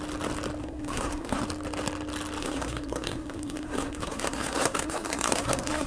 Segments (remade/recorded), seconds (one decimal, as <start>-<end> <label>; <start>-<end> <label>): 0.0-0.6 recorded; 0.6-1.4 remade; 1.4-2.4 recorded; 2.4-5.9 remade